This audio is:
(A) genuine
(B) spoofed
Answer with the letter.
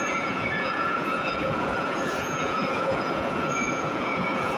B